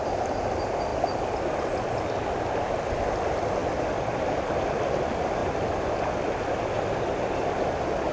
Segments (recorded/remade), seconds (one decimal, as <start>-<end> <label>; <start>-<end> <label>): 0.0-8.1 recorded